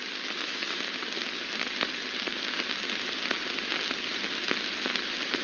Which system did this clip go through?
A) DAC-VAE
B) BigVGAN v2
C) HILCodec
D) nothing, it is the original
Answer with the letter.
D